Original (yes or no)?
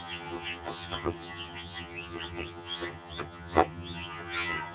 no